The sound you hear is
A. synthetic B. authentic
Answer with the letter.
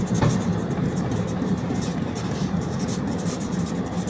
A